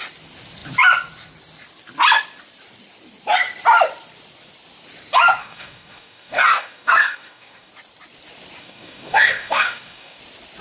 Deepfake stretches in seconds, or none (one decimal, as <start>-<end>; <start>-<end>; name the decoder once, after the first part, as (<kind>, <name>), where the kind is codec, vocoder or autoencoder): 5.4-7.7 (codec, DAC); 8.6-10.2